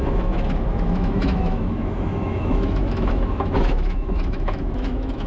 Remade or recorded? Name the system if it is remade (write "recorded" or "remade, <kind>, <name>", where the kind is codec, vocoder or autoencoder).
remade, autoencoder, DAC-VAE